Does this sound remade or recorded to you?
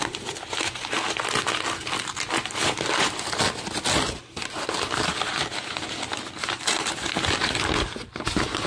recorded